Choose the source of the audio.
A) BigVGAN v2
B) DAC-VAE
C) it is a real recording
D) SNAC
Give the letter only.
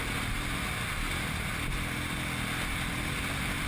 C